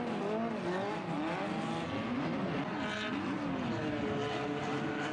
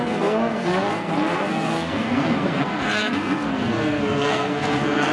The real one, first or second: first